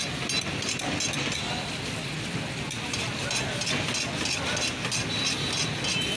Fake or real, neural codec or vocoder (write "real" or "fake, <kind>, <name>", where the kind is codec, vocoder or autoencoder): real